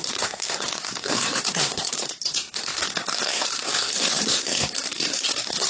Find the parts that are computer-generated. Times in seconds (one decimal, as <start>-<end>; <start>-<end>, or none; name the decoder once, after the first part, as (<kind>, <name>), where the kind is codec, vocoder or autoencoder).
0.0-5.7 (codec, SNAC)

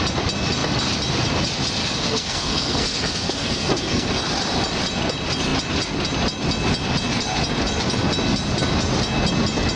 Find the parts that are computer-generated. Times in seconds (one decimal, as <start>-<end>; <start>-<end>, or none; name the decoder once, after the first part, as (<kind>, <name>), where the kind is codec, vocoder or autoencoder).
1.8-4.2 (codec, SNAC)

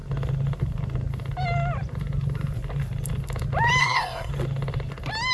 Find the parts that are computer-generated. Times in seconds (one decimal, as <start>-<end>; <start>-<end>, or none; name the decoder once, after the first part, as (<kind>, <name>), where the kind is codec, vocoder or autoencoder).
3.8-4.3 (codec, SNAC)

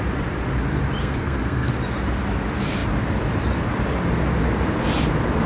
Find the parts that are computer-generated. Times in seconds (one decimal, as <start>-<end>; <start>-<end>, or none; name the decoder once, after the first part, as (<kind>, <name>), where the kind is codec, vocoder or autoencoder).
1.0-1.7 (codec, SNAC)